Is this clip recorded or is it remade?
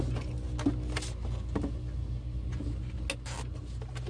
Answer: recorded